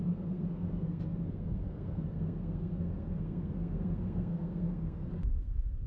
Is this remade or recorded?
remade